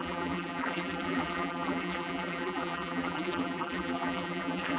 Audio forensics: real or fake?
fake